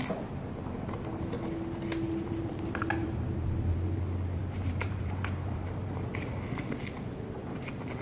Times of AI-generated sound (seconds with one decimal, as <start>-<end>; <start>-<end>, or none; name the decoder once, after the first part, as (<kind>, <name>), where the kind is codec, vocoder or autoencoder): 3.0-3.6 (vocoder, BigVGAN v2); 4.4-6.1